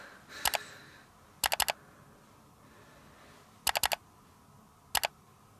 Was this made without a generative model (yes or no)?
yes